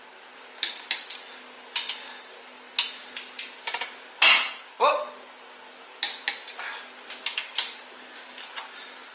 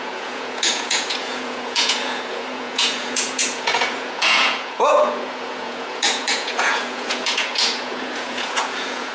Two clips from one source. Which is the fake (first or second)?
second